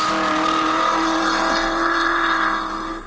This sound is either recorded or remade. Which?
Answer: recorded